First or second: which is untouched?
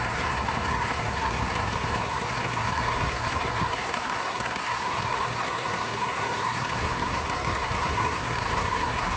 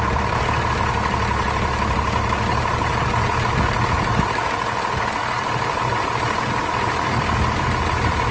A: second